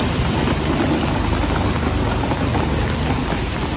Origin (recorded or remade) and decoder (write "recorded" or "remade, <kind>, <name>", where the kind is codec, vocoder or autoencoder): recorded